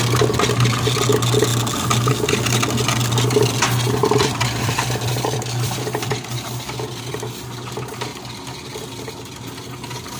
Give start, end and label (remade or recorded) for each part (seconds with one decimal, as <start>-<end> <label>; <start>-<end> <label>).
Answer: 0.0-4.0 recorded; 4.0-7.0 remade; 7.0-10.2 recorded